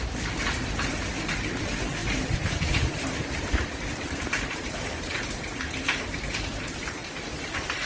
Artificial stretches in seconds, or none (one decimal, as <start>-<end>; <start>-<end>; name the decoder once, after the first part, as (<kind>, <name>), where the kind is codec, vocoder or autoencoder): none